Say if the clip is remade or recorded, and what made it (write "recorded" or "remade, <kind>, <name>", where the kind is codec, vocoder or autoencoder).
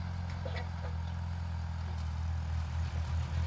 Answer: recorded